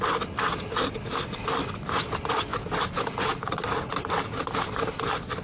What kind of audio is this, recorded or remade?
recorded